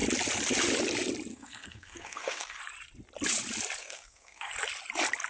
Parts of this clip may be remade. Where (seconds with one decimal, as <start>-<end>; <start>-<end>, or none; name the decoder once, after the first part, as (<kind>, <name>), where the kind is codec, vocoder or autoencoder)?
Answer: 1.3-2.6 (codec, SNAC); 3.8-4.5